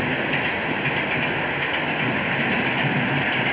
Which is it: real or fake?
real